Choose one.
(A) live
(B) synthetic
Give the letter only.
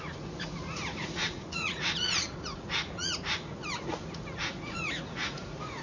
B